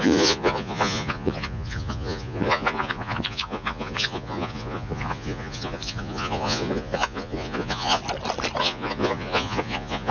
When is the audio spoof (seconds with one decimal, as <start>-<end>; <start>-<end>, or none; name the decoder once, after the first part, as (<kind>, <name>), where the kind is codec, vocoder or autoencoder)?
0.0-8.0 (vocoder, Vocos); 8.6-10.1